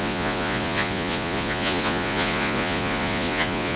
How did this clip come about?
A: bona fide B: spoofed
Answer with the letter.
B